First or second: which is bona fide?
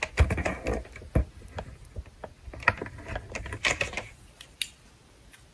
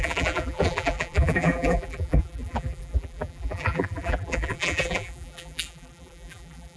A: first